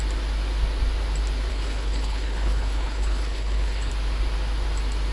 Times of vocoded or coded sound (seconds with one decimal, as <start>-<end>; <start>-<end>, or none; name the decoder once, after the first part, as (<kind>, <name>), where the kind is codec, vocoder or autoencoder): 1.5-3.9 (codec, HILCodec)